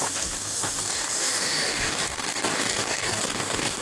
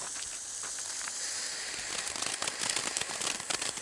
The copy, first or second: first